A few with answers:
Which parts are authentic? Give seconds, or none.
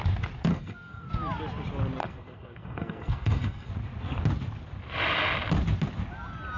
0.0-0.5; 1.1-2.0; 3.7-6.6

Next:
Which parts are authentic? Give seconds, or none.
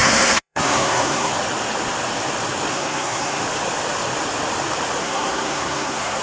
1.3-2.7; 3.4-5.0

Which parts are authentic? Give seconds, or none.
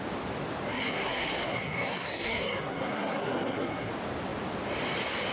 0.0-0.7; 3.9-5.3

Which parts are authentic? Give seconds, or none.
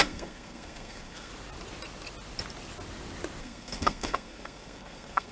1.3-3.4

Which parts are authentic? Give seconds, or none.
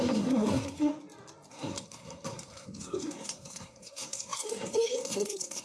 0.9-1.5